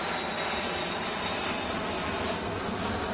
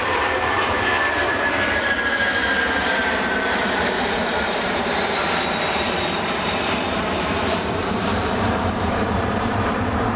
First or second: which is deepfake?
second